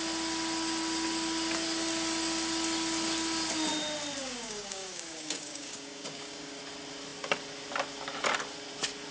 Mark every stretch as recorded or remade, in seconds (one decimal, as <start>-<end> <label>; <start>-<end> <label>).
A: 0.0-4.2 recorded; 4.2-6.6 remade; 6.6-9.1 recorded